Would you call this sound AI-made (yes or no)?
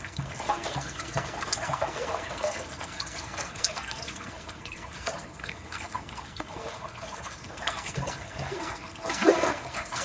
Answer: yes